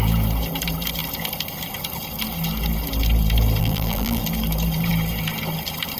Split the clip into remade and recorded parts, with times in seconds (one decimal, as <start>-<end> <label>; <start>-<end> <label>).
0.0-3.6 recorded; 3.6-4.2 remade; 4.2-6.0 recorded